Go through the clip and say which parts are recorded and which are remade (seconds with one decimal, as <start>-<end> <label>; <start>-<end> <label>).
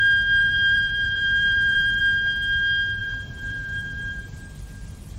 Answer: 0.0-0.4 recorded; 0.4-2.0 remade; 2.0-3.0 recorded; 3.0-4.2 remade; 4.2-5.2 recorded